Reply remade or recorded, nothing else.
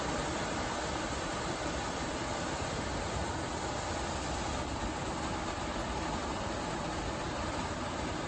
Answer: recorded